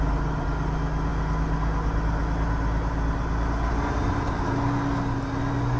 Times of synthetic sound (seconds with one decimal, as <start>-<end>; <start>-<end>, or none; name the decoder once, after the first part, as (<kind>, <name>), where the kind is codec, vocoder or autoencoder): none